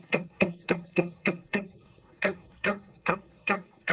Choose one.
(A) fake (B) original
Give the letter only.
A